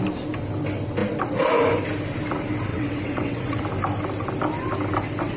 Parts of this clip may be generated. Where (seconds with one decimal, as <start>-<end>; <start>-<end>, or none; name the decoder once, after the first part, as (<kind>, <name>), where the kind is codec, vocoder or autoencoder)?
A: 2.7-3.6 (vocoder, WaveNeXt)